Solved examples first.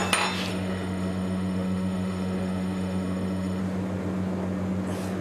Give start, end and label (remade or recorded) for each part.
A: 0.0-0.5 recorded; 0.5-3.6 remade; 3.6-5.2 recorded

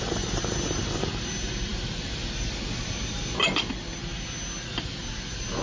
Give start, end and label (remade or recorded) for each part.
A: 0.0-5.6 recorded

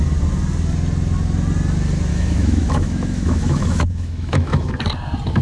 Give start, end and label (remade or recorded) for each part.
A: 0.0-2.1 recorded; 2.1-4.7 remade; 4.7-5.4 recorded

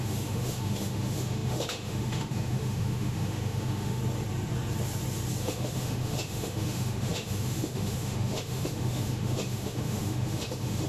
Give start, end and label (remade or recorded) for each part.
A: 0.0-4.0 remade; 4.0-5.4 recorded; 5.4-10.9 remade

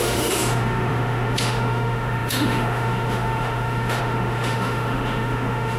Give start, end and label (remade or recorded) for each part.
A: 0.0-5.8 remade